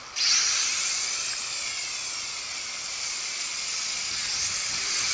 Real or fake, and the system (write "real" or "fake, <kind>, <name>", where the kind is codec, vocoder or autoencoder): real